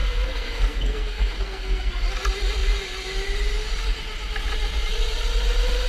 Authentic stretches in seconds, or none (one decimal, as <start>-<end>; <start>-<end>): 1.9-5.9